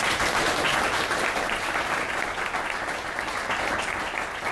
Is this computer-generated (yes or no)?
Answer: no